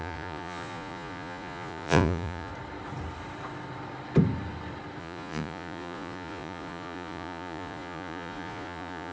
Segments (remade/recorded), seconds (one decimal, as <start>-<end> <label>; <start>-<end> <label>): 0.0-2.5 remade; 2.5-5.0 recorded; 5.0-9.1 remade